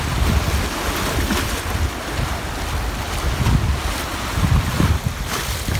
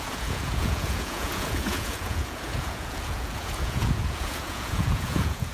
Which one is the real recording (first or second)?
first